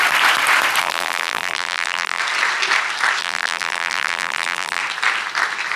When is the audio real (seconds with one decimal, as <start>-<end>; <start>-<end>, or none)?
0.0-0.8; 2.2-3.2; 4.8-5.8